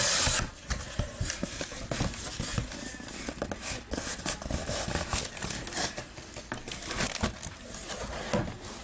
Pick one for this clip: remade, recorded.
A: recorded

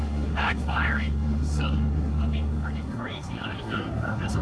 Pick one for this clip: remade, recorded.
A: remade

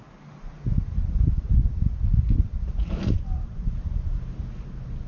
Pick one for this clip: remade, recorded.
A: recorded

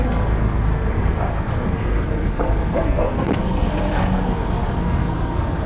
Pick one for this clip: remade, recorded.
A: remade